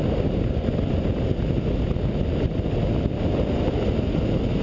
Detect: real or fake real